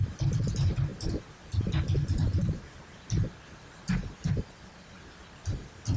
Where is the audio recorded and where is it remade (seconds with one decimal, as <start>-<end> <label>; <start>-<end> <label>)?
0.0-6.0 recorded